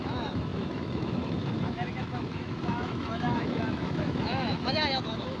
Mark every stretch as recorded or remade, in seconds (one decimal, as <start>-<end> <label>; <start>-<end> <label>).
0.0-5.4 remade